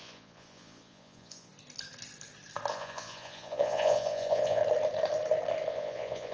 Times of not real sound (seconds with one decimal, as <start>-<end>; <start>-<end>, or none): 0.0-1.5; 2.7-4.6; 5.7-6.3